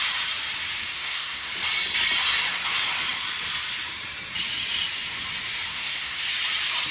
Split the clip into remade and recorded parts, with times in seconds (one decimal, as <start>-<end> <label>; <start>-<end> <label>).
0.0-0.9 recorded; 0.9-1.5 remade; 1.5-5.7 recorded; 5.7-6.2 remade; 6.2-6.9 recorded